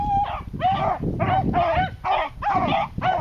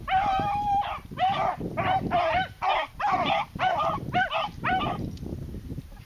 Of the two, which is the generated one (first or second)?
second